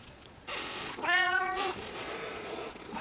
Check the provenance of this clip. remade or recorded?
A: remade